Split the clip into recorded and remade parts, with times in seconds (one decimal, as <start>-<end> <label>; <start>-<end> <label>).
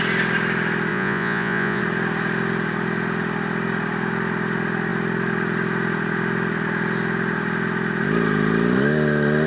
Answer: 0.0-0.9 recorded; 0.9-1.8 remade; 1.8-9.5 recorded